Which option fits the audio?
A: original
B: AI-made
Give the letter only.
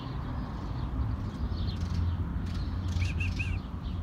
A